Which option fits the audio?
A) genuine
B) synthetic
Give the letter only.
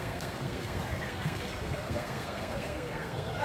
B